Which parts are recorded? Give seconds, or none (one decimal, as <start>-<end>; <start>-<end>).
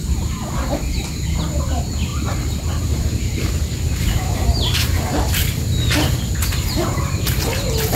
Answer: 0.0-2.1; 4.9-8.0